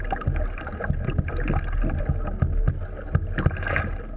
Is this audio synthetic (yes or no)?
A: no